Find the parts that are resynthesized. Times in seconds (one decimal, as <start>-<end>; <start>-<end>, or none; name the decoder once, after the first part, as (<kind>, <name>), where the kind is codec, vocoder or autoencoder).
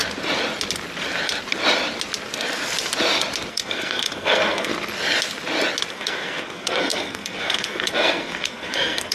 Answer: 3.5-4.7 (codec, SNAC); 5.9-9.1